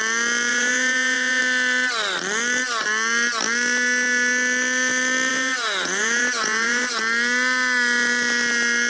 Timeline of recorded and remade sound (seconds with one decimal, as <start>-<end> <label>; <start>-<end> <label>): 0.0-0.5 recorded; 0.5-1.4 remade; 1.4-5.3 recorded; 5.3-7.0 remade; 7.0-8.9 recorded

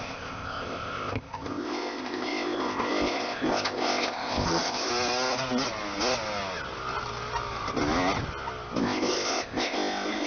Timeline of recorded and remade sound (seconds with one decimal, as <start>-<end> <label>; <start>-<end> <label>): 0.0-4.9 remade; 4.9-8.8 recorded; 8.8-10.3 remade

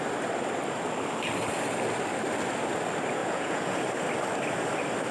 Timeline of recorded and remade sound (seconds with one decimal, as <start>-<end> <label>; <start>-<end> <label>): 0.0-3.2 recorded; 3.2-3.8 remade; 3.8-5.1 recorded

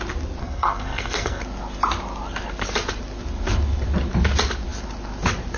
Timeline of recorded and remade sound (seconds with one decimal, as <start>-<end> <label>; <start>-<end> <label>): 0.0-0.4 recorded; 0.4-1.4 remade; 1.4-5.6 recorded